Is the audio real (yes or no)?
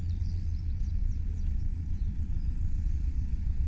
no